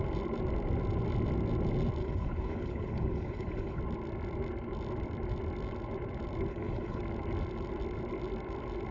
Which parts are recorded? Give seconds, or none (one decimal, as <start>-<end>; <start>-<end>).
0.0-2.0; 3.8-6.5; 7.0-8.9